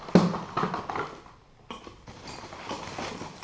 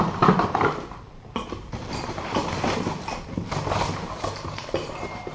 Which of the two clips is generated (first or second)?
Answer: second